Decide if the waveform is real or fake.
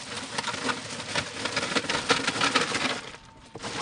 real